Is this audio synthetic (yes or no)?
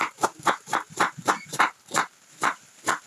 yes